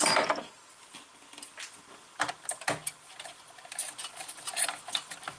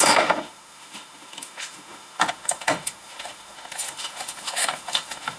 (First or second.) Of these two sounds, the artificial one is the second